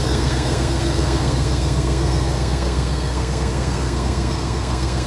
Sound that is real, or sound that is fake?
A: fake